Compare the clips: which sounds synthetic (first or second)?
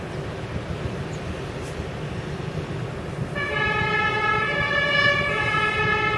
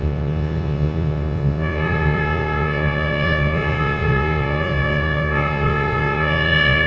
second